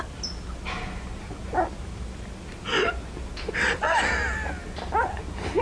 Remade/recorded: recorded